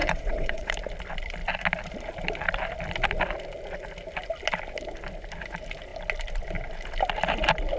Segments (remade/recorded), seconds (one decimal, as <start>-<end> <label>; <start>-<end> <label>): 0.0-0.7 remade; 0.7-7.8 recorded